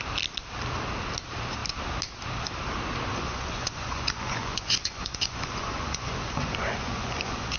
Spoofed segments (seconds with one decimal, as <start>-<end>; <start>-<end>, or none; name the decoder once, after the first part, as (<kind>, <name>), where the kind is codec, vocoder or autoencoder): 3.1-7.6 (vocoder, Vocos)